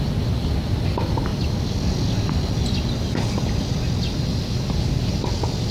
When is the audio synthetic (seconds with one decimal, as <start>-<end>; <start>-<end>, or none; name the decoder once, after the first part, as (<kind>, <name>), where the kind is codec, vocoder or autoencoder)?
none